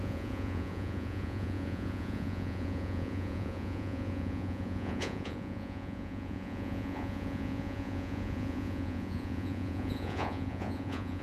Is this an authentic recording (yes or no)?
no